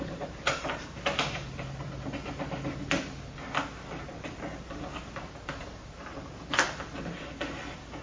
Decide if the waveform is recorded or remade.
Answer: recorded